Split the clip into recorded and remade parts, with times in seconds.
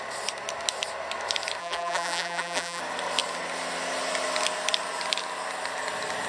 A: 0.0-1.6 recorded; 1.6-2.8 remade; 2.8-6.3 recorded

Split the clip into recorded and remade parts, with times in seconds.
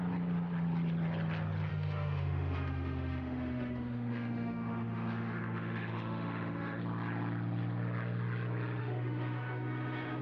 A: 0.0-1.7 recorded; 1.7-6.8 remade; 6.8-8.8 recorded; 8.8-10.2 remade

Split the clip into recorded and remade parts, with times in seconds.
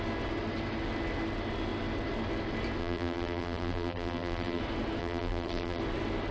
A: 0.0-2.8 recorded; 2.8-4.6 remade; 4.6-5.0 recorded; 5.0-5.8 remade; 5.8-6.3 recorded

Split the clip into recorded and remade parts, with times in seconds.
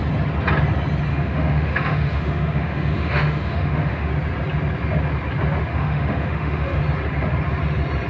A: 0.0-1.1 recorded; 1.1-4.1 remade; 4.1-5.7 recorded; 5.7-6.8 remade; 6.8-8.1 recorded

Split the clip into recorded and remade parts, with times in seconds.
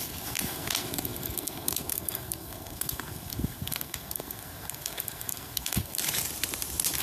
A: 0.0-6.0 remade; 6.0-7.0 recorded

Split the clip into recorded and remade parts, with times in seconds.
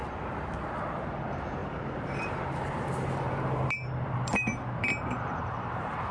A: 0.0-0.7 recorded; 0.7-6.1 remade